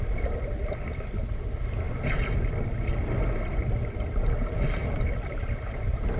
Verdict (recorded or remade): recorded